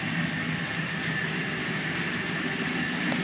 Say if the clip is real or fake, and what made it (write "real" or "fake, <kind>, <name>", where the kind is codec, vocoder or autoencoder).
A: real